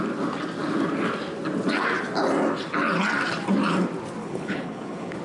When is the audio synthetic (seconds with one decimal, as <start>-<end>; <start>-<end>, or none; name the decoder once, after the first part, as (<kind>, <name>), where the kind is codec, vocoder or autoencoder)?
4.2-5.2 (codec, HILCodec)